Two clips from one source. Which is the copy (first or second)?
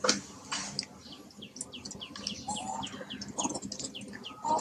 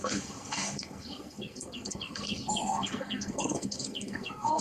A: second